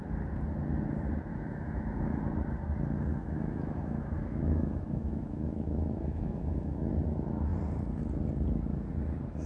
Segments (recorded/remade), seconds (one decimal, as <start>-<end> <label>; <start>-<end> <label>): 0.0-1.3 recorded; 1.3-2.2 remade; 2.2-3.1 recorded; 3.1-6.9 remade; 6.9-9.5 recorded